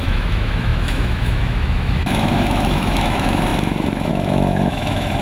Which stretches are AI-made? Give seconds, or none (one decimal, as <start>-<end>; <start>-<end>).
0.0-5.2